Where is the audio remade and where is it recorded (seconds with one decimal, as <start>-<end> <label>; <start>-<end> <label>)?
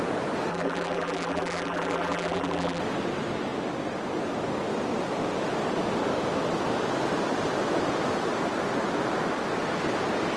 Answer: 0.0-0.5 recorded; 0.5-2.8 remade; 2.8-10.4 recorded